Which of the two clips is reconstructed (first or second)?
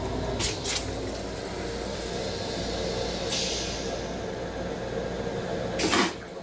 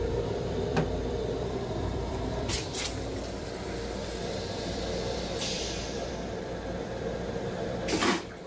second